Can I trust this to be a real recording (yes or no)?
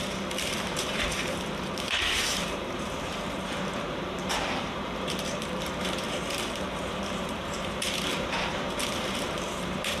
no